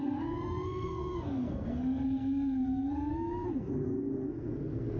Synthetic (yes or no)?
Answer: yes